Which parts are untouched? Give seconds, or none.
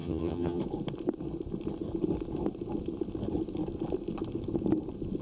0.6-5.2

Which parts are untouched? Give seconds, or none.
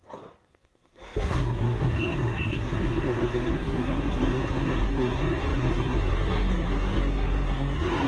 none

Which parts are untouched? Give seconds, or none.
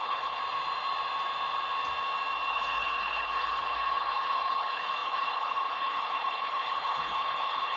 0.4-2.5